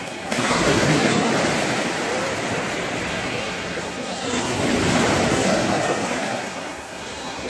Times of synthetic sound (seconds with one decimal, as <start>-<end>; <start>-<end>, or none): 0.0-1.3; 3.1-4.6; 5.3-7.5